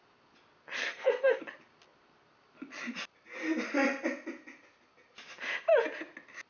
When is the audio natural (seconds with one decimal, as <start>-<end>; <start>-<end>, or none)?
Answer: 0.0-0.8; 1.4-6.5